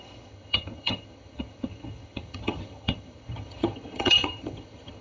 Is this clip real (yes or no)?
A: no